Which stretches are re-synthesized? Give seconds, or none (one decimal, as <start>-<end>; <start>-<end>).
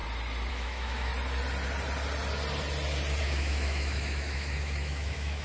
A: 0.5-1.1; 3.2-5.4